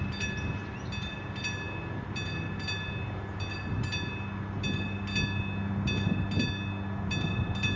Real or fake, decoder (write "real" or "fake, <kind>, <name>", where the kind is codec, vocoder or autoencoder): real